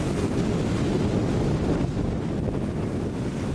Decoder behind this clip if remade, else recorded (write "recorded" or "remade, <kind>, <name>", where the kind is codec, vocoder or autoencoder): recorded